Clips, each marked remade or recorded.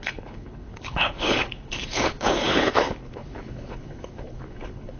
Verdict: remade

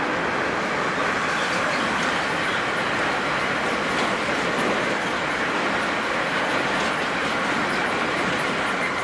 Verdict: recorded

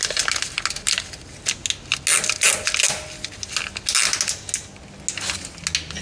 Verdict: recorded